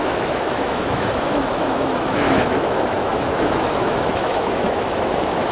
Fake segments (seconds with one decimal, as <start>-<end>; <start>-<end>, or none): 0.0-5.5